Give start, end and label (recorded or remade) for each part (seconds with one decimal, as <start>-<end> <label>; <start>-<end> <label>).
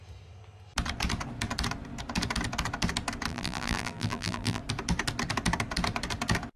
0.0-3.3 recorded; 3.3-4.6 remade; 4.6-6.6 recorded